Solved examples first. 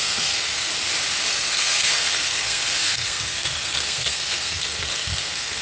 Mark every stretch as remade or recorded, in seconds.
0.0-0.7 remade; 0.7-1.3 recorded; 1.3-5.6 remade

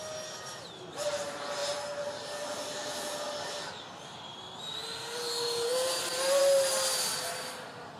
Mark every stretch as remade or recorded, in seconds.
0.0-8.0 recorded

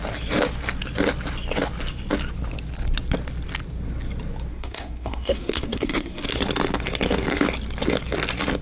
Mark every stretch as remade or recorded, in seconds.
0.0-4.5 recorded; 4.5-6.3 remade; 6.3-8.6 recorded

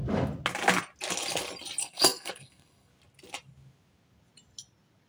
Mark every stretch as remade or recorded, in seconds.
0.0-1.8 recorded; 1.8-2.9 remade; 2.9-5.1 recorded

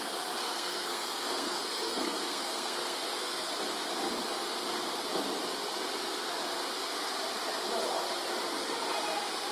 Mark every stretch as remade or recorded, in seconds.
0.0-0.4 recorded; 0.4-3.5 remade; 3.5-9.5 recorded